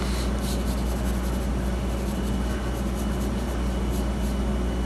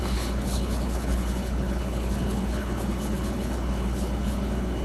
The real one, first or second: first